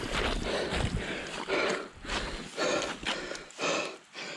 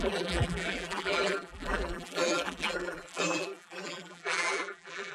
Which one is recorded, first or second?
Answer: first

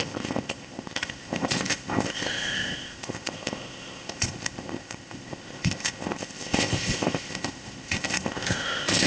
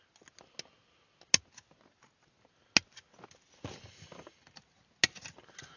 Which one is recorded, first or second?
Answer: second